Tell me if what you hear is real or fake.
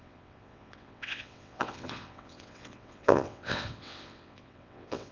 fake